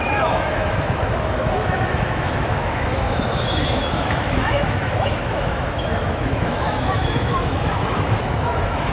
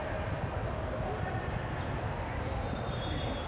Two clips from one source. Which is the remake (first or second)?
first